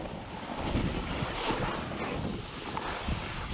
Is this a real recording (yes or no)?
yes